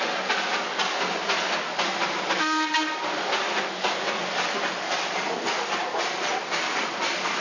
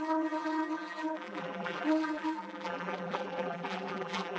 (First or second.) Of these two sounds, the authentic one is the first